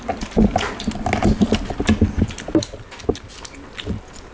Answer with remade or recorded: recorded